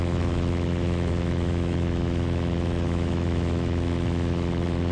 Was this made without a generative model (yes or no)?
no